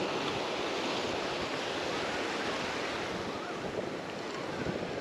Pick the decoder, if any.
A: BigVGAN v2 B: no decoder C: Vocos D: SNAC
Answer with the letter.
B